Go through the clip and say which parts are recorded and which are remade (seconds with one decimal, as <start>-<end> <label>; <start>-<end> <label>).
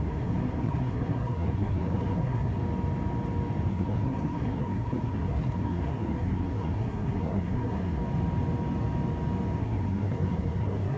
0.0-2.6 remade; 2.6-3.7 recorded; 3.7-8.0 remade; 8.0-9.6 recorded; 9.6-11.0 remade